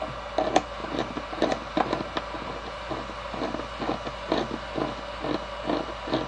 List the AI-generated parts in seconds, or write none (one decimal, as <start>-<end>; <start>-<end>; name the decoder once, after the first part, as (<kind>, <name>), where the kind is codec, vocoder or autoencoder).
0.8-2.9 (vocoder, BigVGAN v2)